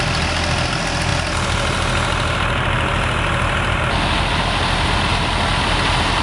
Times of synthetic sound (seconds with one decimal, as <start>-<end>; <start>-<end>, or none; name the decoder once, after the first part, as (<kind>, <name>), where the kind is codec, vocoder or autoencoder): none